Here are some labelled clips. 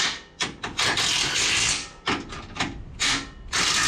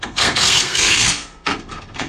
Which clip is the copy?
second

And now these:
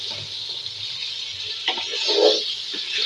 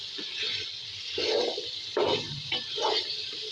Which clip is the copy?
second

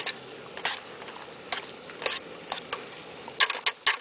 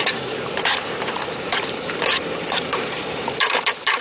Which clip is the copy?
second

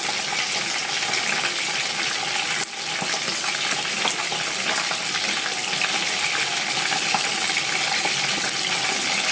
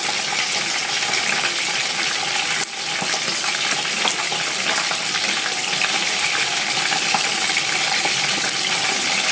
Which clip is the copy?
second